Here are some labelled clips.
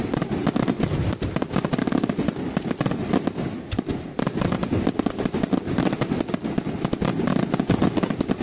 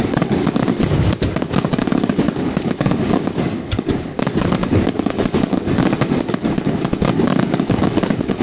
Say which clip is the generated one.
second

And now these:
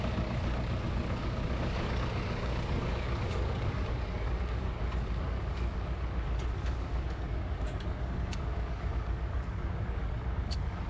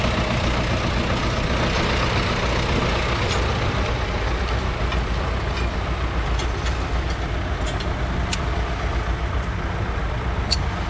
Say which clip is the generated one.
first